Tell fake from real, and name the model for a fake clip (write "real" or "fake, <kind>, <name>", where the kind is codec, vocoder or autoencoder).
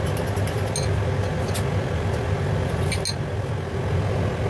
real